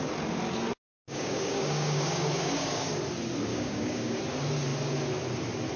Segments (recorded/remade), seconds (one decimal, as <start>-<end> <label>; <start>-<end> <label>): 0.0-0.9 recorded; 0.9-2.9 remade; 2.9-3.5 recorded; 3.5-4.2 remade; 4.2-5.8 recorded